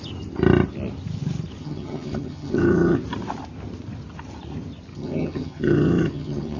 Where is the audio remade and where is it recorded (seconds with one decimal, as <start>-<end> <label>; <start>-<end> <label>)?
0.0-1.6 recorded; 1.6-3.0 remade; 3.0-4.9 recorded; 4.9-6.6 remade